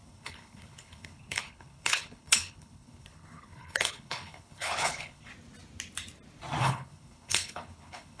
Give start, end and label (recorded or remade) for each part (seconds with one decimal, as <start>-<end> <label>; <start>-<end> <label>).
0.0-5.3 remade; 5.3-6.6 recorded; 6.6-8.2 remade